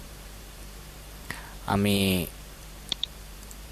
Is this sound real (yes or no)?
no